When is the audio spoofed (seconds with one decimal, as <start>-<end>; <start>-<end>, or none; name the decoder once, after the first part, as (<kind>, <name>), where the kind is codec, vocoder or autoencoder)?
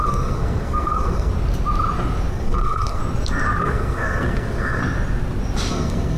0.0-1.3 (codec, SNAC); 2.3-3.0; 3.6-4.8; 5.7-6.2